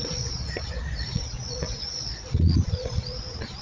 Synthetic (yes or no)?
yes